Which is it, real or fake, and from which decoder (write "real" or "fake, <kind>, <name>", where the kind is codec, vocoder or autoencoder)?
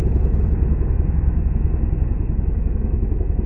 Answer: fake, autoencoder, DAC-VAE